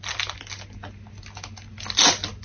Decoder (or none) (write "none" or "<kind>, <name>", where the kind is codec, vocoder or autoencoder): none